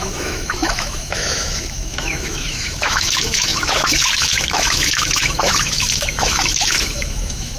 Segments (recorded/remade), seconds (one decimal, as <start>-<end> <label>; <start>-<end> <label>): 0.0-7.6 remade